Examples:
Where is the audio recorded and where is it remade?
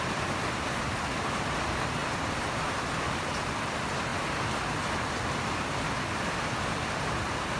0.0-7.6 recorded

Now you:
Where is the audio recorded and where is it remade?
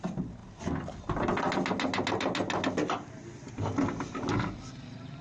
0.0-5.2 recorded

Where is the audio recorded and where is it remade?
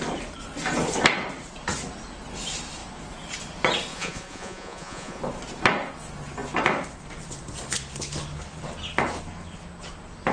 0.0-3.9 recorded; 3.9-5.2 remade; 5.2-10.3 recorded